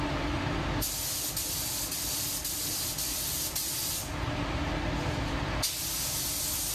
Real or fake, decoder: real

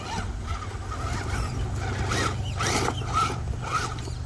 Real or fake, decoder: real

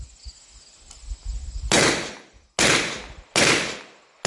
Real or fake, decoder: real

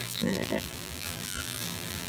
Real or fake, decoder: fake, vocoder, BigVGAN v2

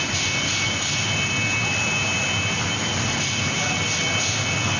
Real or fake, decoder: real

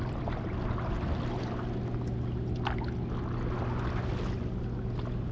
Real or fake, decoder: real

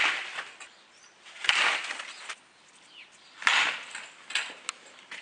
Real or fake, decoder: real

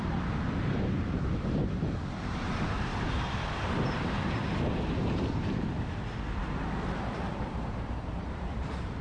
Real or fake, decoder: fake, vocoder, BigVGAN v2